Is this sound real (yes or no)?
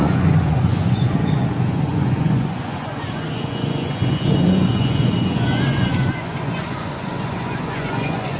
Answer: no